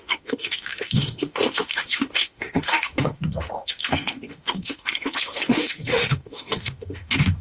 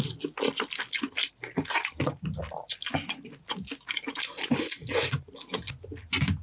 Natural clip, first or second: second